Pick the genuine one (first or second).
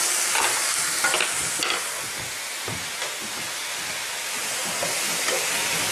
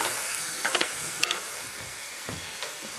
first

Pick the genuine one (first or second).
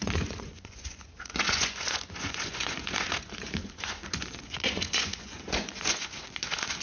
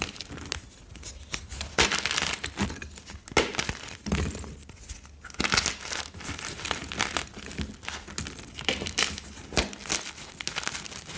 second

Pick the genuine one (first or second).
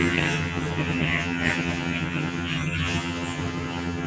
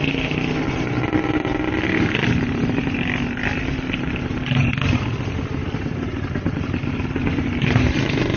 second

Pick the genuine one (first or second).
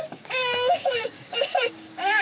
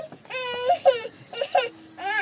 second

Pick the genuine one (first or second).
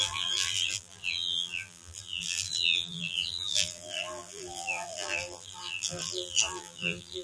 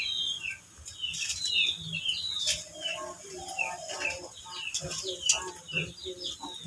second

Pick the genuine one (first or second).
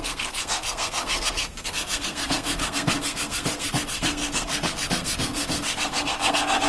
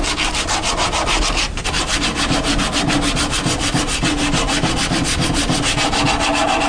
second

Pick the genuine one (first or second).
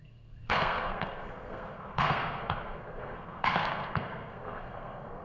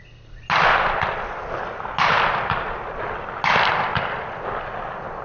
second